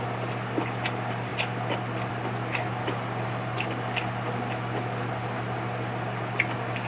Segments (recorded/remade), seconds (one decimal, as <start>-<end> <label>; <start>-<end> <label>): 0.0-6.9 recorded